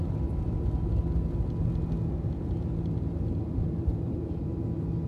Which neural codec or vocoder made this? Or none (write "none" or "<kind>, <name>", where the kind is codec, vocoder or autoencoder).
none